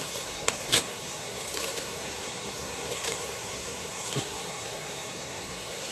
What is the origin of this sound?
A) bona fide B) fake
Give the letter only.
B